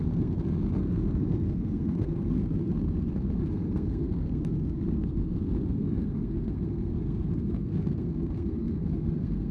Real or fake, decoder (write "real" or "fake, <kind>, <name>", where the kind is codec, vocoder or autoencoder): fake, codec, SNAC